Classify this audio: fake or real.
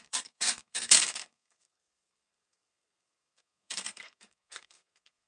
fake